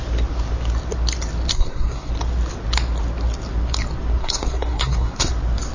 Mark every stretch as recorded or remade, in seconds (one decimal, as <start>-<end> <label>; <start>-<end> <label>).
0.0-1.5 recorded; 1.5-2.1 remade; 2.1-4.2 recorded; 4.2-5.3 remade; 5.3-5.7 recorded